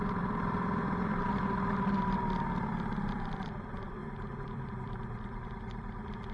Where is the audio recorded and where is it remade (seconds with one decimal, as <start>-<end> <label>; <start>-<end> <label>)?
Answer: 0.0-6.3 remade